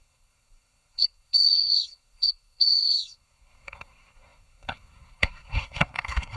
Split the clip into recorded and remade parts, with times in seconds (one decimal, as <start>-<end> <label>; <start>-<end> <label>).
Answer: 0.0-6.4 remade